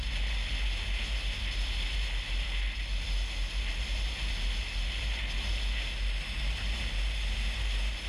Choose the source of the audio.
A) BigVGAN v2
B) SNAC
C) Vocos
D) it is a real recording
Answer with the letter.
D